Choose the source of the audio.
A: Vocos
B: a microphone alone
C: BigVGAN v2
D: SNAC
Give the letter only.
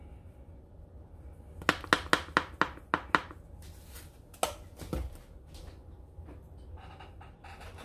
B